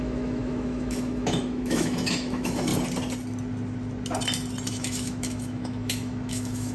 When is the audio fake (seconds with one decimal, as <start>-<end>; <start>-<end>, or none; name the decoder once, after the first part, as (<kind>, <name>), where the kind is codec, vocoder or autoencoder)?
0.0-2.7 (autoencoder, DAC-VAE); 4.7-6.7